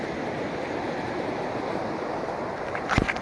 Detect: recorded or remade recorded